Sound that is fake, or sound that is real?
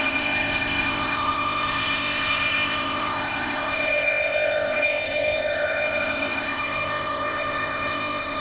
fake